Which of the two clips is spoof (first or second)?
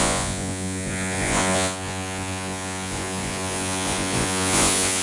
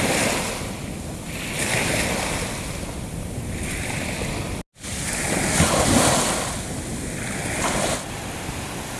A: first